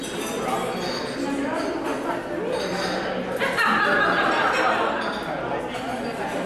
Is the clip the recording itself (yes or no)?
yes